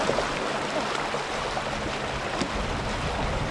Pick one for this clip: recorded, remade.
recorded